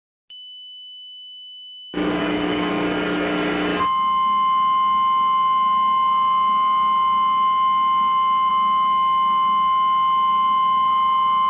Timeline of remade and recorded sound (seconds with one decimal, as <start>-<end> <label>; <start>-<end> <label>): 0.0-2.2 recorded; 2.2-2.7 remade; 2.7-11.5 recorded